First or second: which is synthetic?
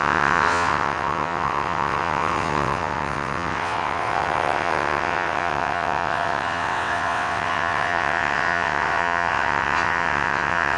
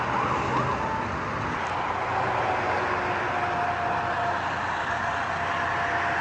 first